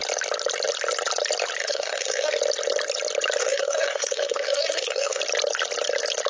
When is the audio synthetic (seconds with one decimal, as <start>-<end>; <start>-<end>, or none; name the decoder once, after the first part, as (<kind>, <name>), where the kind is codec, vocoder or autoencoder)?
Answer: 1.6-2.3 (codec, SNAC); 3.4-5.2